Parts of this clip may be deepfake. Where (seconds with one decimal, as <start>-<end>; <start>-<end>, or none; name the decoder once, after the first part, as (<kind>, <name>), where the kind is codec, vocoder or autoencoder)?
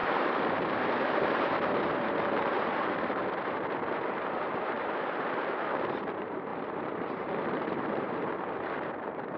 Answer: 0.0-3.2 (vocoder, BigVGAN v2); 4.1-9.4